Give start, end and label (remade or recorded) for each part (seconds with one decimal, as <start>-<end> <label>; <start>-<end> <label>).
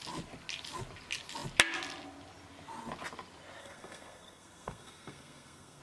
0.0-3.6 recorded; 3.6-5.8 remade